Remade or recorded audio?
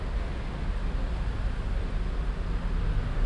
recorded